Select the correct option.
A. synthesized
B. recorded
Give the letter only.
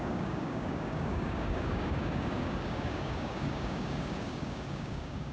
A